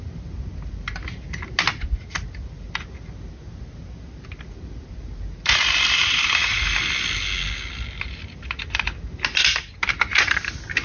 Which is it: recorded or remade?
recorded